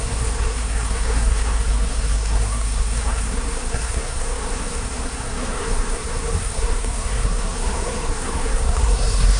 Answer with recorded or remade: remade